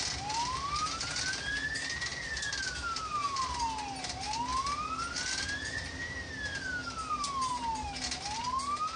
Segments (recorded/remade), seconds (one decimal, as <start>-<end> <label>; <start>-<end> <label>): 0.0-2.1 recorded; 2.1-3.6 remade; 3.6-9.0 recorded